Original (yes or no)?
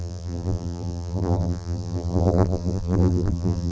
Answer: no